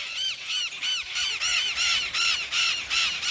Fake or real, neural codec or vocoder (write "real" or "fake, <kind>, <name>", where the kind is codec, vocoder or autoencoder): real